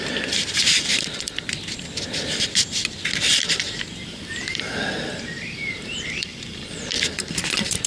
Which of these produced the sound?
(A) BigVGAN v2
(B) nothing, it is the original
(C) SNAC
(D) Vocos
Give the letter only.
A